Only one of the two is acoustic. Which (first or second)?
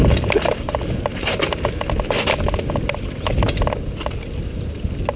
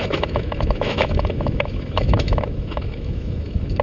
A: first